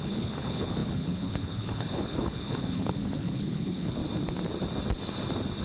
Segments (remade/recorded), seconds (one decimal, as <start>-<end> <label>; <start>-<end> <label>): 0.0-4.0 remade; 4.0-5.6 recorded